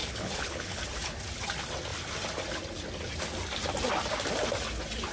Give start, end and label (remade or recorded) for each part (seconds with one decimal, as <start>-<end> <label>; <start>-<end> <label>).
0.0-0.8 remade; 0.8-5.1 recorded